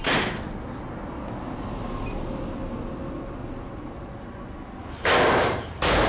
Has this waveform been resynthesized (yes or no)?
no